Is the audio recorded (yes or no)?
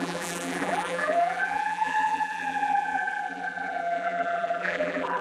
no